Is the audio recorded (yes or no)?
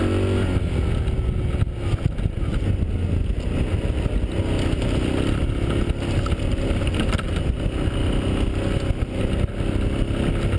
yes